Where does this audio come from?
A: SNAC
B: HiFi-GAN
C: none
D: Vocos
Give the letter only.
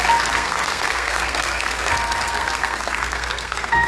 A